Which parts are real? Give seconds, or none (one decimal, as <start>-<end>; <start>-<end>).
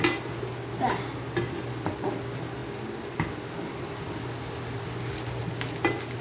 0.0-6.2